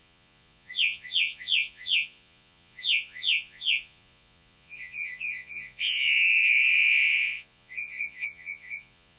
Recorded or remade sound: remade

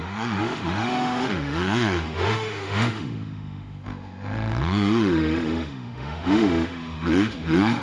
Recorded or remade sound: remade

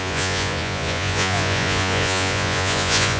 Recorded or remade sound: remade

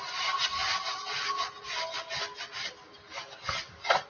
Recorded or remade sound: recorded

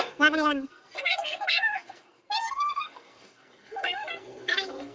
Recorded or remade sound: remade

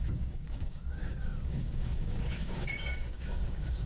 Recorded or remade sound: remade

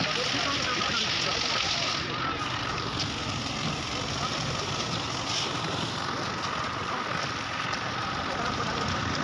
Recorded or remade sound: recorded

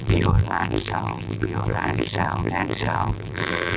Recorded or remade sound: remade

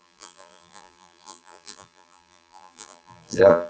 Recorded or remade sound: remade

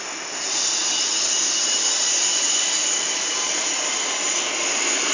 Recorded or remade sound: recorded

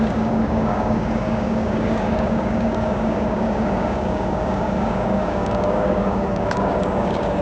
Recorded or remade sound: remade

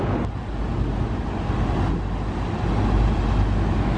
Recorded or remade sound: recorded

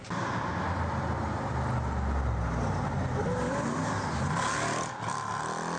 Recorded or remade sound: recorded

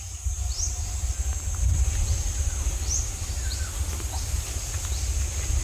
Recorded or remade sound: recorded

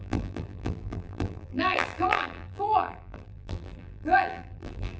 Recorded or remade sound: remade